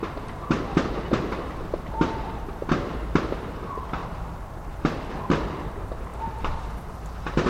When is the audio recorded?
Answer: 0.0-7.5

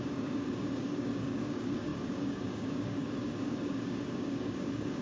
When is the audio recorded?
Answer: none

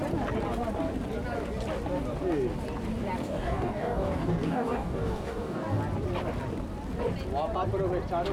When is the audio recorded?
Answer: 0.0-3.2; 5.8-8.3